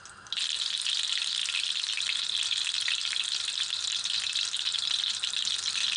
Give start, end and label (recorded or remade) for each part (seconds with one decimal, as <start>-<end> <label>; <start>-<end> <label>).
0.0-1.4 recorded; 1.4-5.0 remade; 5.0-6.0 recorded